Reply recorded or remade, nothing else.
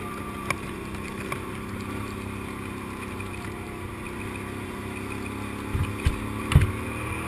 recorded